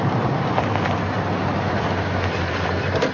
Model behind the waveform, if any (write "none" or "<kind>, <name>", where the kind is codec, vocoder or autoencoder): vocoder, BigVGAN v2